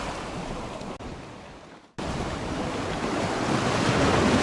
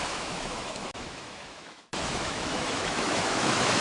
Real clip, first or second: first